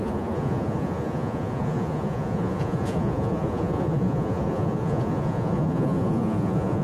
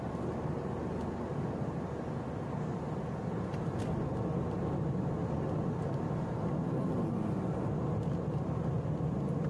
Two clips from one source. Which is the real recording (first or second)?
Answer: second